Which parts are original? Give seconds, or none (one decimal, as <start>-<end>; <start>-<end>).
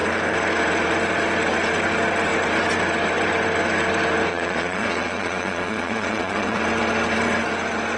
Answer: 0.0-4.3; 6.6-8.0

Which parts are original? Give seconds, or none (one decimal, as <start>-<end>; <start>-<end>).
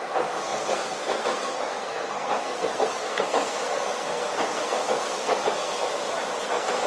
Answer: 5.9-6.4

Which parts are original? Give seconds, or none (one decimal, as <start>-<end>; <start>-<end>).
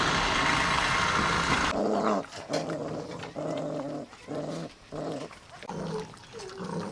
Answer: 0.0-6.9